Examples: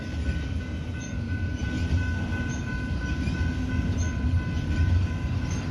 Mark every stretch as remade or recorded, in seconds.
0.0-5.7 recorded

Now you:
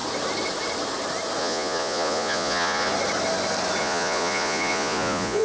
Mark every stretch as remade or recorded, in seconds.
0.0-1.4 recorded; 1.4-2.9 remade; 2.9-3.8 recorded; 3.8-5.4 remade

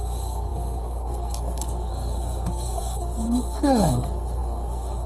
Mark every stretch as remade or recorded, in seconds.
0.0-5.1 remade

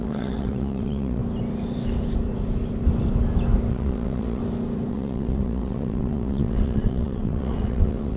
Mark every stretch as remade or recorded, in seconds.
0.0-1.2 remade; 1.2-3.7 recorded; 3.7-4.4 remade; 4.4-4.9 recorded; 4.9-8.2 remade

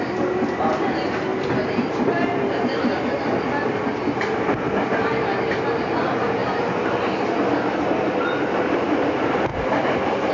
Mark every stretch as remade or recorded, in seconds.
0.0-6.4 remade; 6.4-8.0 recorded; 8.0-10.3 remade

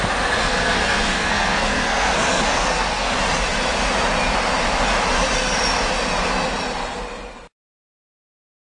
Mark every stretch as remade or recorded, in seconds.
0.0-0.4 recorded; 0.4-3.1 remade; 3.1-8.7 recorded

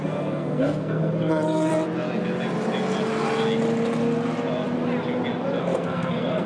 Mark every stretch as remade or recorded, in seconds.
0.0-1.7 remade; 1.7-5.6 recorded; 5.6-6.5 remade

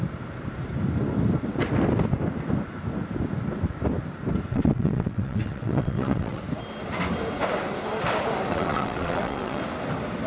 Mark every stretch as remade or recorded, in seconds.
0.0-4.5 recorded; 4.5-6.4 remade; 6.4-8.5 recorded; 8.5-9.6 remade; 9.6-10.3 recorded